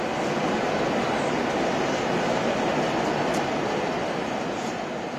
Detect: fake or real real